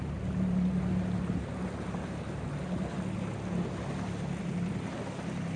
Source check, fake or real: real